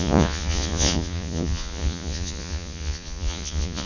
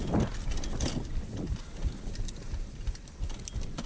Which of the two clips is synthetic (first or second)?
first